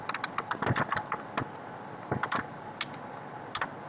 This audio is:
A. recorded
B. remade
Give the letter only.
A